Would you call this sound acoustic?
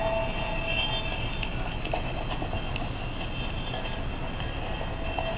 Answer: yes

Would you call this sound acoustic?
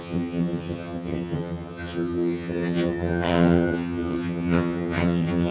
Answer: no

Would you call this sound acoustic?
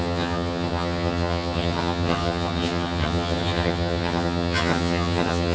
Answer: no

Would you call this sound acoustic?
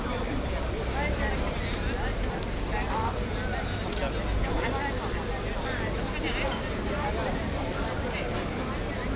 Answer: yes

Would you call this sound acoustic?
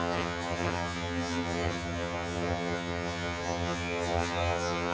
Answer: no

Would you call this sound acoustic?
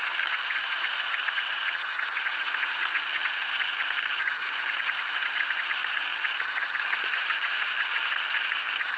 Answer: no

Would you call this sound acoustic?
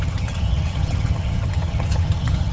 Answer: no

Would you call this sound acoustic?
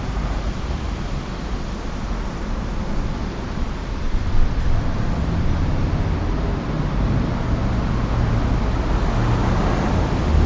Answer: yes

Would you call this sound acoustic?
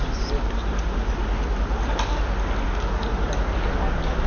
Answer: yes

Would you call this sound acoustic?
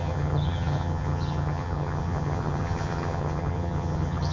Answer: no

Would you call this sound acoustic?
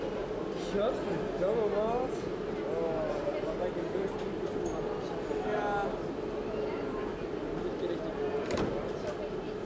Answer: yes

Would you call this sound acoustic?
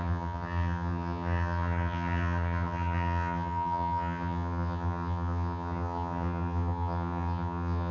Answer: no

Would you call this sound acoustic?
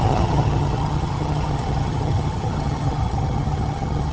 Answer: no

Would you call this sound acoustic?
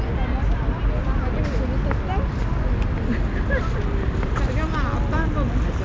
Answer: yes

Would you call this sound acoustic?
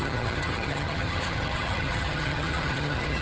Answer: no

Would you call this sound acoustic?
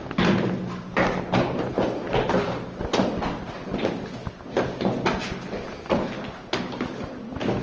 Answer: yes